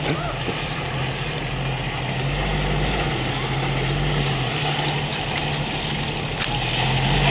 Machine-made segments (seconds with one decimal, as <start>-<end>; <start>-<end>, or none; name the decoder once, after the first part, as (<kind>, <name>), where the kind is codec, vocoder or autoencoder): none